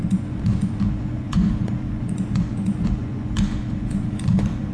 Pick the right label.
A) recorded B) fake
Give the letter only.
B